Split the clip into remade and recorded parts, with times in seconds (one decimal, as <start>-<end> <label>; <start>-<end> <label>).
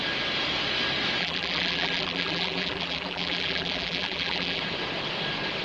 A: 0.0-1.2 recorded; 1.2-4.6 remade; 4.6-5.6 recorded